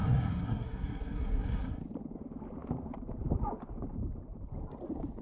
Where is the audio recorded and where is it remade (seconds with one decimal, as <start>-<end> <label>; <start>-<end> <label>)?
0.0-1.8 remade; 1.8-5.2 recorded